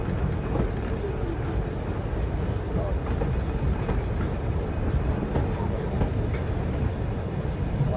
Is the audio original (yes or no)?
yes